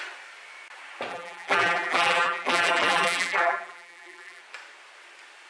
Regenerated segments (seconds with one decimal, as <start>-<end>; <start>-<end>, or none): 1.1-4.4